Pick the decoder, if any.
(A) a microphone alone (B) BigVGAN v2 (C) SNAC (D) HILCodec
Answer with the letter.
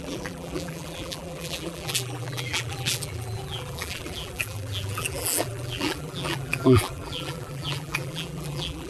B